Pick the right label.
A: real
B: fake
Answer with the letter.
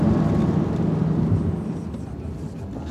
A